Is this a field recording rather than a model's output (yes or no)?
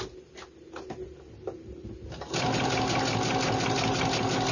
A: yes